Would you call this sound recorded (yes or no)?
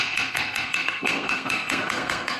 no